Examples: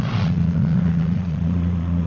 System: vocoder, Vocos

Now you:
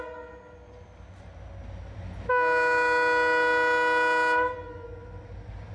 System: none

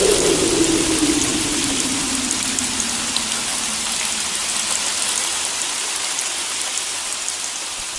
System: none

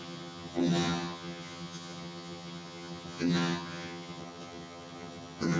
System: vocoder, HiFi-GAN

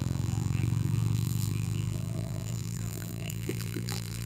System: vocoder, BigVGAN v2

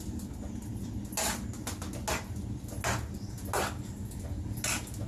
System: none